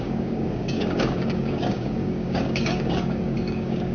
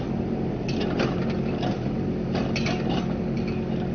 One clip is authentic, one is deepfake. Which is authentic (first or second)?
second